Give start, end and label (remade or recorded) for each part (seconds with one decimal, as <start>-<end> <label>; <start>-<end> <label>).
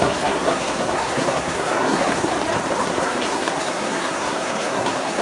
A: 0.0-2.3 remade; 2.3-2.8 recorded; 2.8-5.2 remade